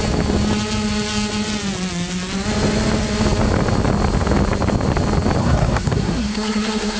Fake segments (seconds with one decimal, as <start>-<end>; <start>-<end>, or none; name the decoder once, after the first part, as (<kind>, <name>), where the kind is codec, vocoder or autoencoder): 5.4-7.0 (codec, SNAC)